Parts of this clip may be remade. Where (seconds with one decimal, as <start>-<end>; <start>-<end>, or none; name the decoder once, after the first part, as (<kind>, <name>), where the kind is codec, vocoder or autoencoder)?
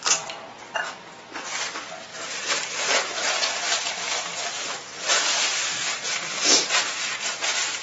2.1-6.8 (vocoder, BigVGAN v2)